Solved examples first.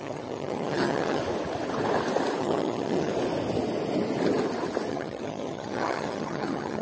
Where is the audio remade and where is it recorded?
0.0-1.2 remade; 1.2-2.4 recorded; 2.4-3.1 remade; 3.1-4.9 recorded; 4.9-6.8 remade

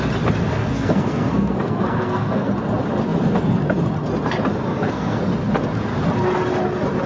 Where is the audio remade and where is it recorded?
0.0-0.6 recorded; 0.6-2.5 remade; 2.5-4.7 recorded; 4.7-5.2 remade; 5.2-7.1 recorded

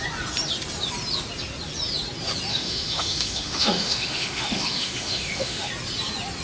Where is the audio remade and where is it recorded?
0.0-2.5 recorded; 2.5-5.7 remade; 5.7-6.4 recorded

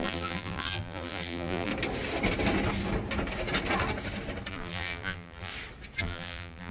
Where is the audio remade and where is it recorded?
0.0-1.7 remade; 1.7-4.5 recorded; 4.5-5.5 remade; 5.5-6.0 recorded; 6.0-6.7 remade

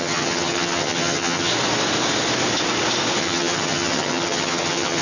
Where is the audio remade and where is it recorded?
0.0-1.5 remade; 1.5-3.2 recorded; 3.2-5.0 remade

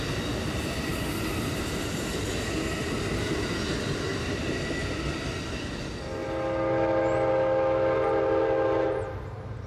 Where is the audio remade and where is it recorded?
0.0-9.7 recorded

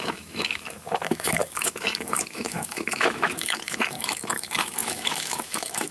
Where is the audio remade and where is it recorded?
0.0-5.9 remade

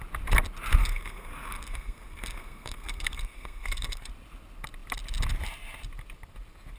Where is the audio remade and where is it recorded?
0.0-0.8 recorded; 0.8-4.1 remade; 4.1-6.8 recorded